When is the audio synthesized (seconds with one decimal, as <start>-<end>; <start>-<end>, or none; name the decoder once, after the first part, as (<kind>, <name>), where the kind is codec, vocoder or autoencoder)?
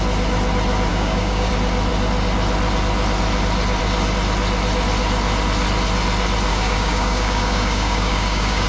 0.9-1.5 (codec, DAC); 6.5-8.7